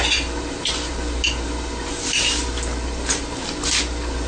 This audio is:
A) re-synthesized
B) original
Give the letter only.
B